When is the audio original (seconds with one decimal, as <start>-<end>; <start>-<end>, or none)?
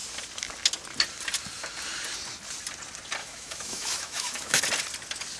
0.0-3.2; 4.6-5.4